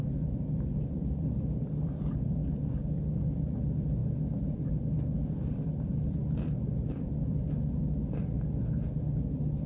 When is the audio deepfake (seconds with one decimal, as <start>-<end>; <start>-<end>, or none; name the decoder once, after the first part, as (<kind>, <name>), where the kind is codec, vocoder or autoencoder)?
0.0-4.0 (vocoder, BigVGAN v2); 4.7-7.8